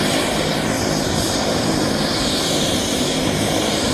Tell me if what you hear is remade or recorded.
remade